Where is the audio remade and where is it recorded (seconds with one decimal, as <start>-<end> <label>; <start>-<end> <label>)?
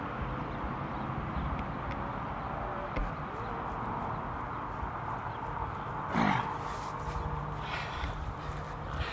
0.0-9.1 recorded